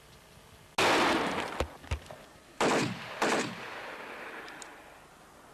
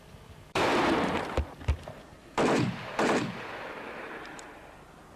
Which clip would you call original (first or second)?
first